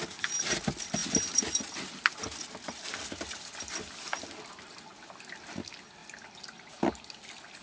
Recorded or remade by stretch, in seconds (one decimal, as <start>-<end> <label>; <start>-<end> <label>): 0.0-7.6 recorded

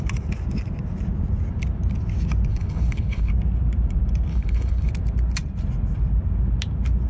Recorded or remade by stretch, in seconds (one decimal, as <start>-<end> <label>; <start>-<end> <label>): 0.0-2.5 recorded; 2.5-3.3 remade; 3.3-4.3 recorded; 4.3-4.9 remade; 4.9-7.1 recorded

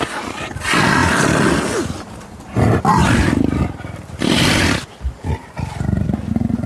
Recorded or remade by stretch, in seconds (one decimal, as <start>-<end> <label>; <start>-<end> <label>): 0.0-6.7 recorded

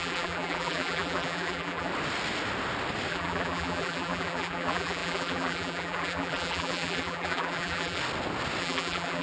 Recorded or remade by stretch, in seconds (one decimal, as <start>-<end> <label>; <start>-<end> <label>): 0.0-1.9 remade; 1.9-3.1 recorded; 3.1-8.0 remade; 8.0-8.6 recorded; 8.6-9.2 remade

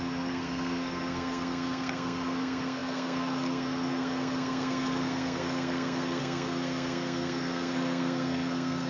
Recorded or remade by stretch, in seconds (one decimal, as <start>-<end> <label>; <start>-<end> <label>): 0.0-8.9 remade

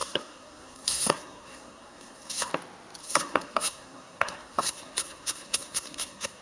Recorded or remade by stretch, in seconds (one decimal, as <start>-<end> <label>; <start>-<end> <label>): 0.0-2.5 remade; 2.5-3.0 recorded; 3.0-6.4 remade

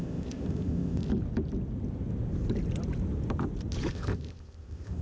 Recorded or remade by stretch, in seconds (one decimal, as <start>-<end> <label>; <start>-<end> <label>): 0.0-1.1 remade; 1.1-3.9 recorded; 3.9-5.0 remade

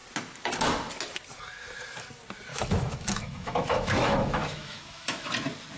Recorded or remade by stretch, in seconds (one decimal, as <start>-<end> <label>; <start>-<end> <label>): 0.0-2.5 recorded; 2.5-5.3 remade; 5.3-5.8 recorded